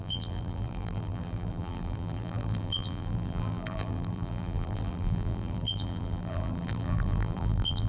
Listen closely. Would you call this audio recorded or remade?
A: remade